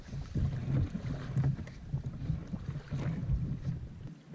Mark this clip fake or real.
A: real